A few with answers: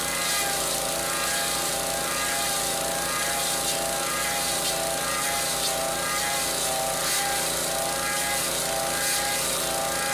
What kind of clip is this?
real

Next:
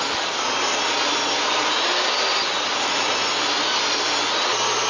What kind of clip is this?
real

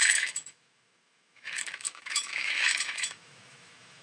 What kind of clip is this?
fake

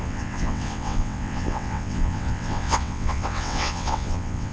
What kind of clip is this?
fake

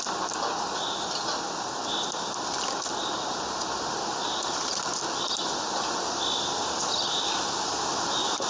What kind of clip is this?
real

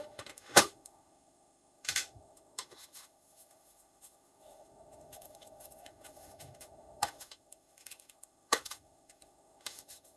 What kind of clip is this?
fake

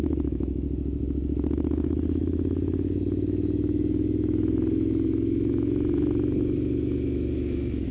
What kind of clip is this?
fake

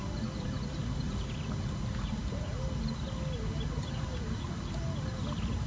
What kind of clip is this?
real